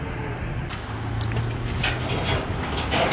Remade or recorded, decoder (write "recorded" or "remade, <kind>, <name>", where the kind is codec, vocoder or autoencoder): recorded